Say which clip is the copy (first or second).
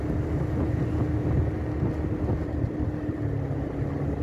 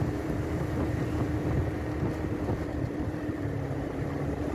second